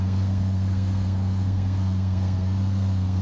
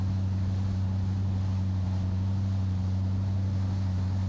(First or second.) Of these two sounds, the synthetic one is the first